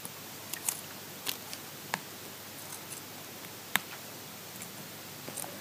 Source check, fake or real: real